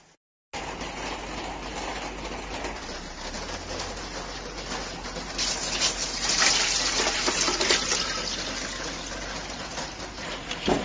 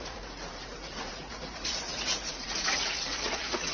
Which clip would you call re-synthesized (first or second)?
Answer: second